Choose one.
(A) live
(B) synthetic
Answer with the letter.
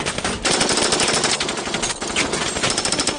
A